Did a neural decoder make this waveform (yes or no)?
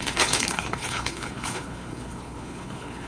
yes